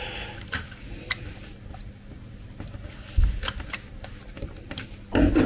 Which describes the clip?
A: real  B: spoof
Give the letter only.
A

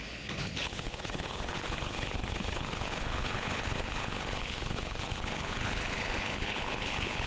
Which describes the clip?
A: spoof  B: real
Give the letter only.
A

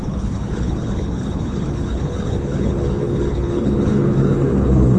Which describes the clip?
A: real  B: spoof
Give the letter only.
B